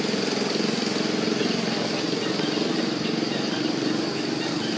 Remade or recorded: recorded